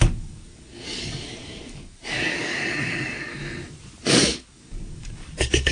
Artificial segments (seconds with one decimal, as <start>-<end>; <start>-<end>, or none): 0.0-3.4; 4.1-5.7